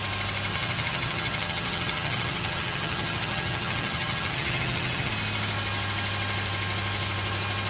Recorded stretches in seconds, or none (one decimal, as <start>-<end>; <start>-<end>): 0.0-0.5; 5.1-7.7

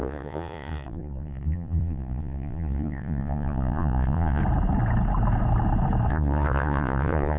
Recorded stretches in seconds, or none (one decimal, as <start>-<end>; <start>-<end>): 4.4-6.1

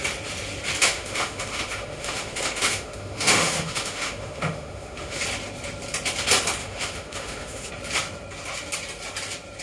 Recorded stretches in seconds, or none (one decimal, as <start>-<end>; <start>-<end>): 0.0-0.8; 5.2-6.6; 7.7-9.6

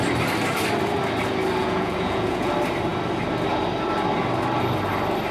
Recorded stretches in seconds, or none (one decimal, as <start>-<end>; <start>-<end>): 0.0-1.6; 2.5-5.3